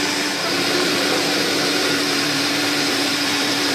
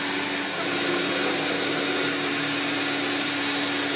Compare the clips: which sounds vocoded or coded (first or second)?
first